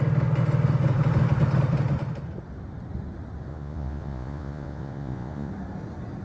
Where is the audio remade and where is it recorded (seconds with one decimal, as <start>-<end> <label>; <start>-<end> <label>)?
0.0-3.5 recorded; 3.5-5.5 remade; 5.5-6.2 recorded